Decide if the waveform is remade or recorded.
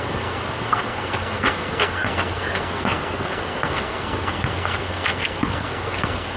remade